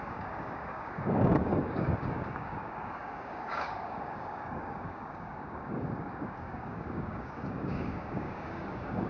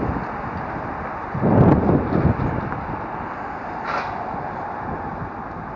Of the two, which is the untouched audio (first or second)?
second